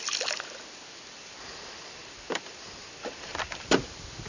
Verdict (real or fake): real